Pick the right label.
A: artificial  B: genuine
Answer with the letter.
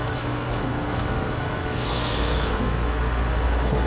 A